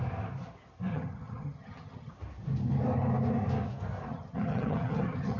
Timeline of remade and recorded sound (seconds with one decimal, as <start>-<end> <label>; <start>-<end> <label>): 0.0-0.9 recorded; 0.9-2.1 remade; 2.1-4.1 recorded; 4.1-5.4 remade